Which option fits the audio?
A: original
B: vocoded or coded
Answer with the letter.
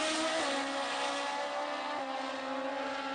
A